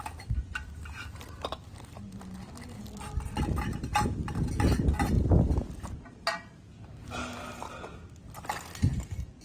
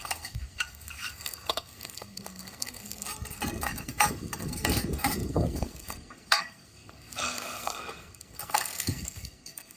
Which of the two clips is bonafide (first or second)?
first